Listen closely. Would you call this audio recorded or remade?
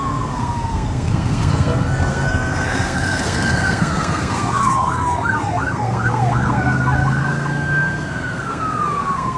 remade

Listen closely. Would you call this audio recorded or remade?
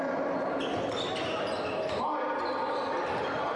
recorded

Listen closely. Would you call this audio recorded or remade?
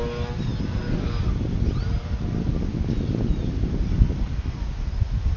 recorded